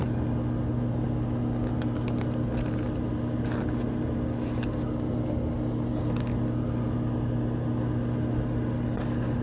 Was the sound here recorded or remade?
recorded